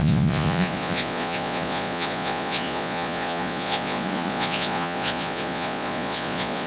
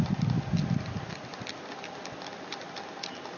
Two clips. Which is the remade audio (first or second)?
first